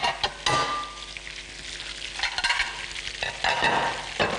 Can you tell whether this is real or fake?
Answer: real